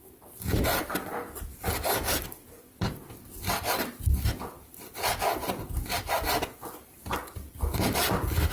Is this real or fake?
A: real